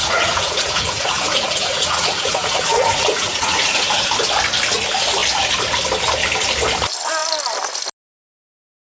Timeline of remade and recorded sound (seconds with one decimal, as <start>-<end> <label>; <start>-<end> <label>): 0.0-4.1 remade; 4.1-9.0 recorded